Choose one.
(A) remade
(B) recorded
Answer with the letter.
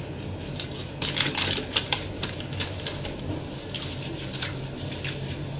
B